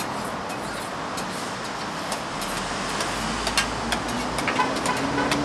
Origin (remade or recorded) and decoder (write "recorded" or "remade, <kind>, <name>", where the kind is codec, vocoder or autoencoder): recorded